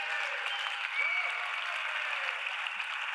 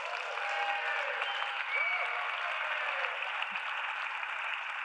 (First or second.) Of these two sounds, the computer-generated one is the first